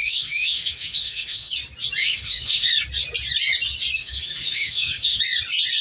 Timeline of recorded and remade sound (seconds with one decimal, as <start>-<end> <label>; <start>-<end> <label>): 0.0-1.5 remade; 1.5-2.0 recorded; 2.0-2.7 remade; 2.7-4.0 recorded; 4.0-5.2 remade; 5.2-5.8 recorded